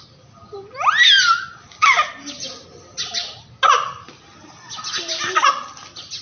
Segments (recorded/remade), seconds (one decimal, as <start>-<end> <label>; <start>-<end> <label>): 0.0-6.2 recorded